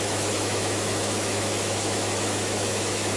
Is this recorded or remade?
remade